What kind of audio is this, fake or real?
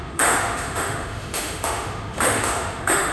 fake